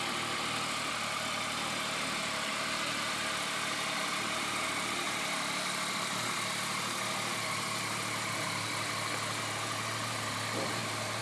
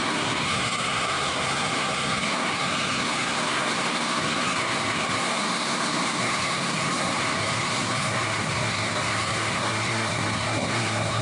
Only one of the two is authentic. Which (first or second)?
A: first